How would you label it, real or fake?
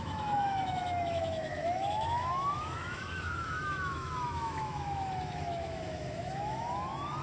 fake